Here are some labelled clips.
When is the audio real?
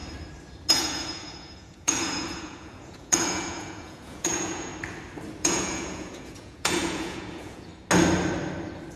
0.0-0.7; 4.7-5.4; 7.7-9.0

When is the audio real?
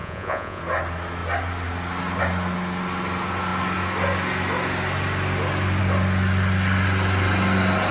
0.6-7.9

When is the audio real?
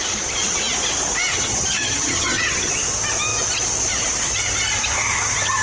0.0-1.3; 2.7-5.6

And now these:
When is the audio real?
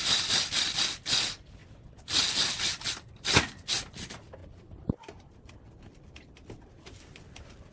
1.6-2.4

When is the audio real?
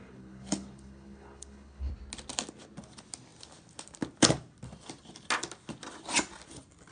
1.9-6.9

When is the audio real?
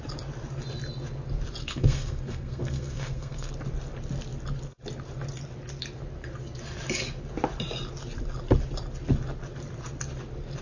0.0-1.6; 3.5-10.6